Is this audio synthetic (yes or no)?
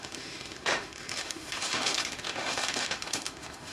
yes